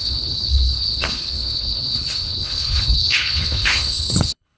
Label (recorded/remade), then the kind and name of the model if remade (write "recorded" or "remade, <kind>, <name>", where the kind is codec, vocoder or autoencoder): remade, codec, HILCodec